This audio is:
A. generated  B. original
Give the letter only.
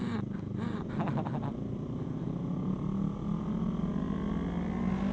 B